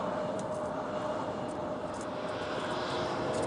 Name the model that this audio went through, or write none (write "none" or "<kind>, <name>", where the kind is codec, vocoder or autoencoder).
none